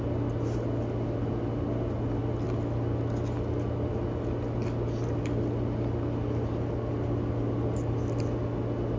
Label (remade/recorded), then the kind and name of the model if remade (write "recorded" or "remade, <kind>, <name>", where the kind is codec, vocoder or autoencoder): recorded